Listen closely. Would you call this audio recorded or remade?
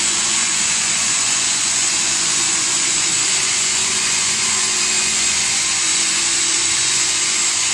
remade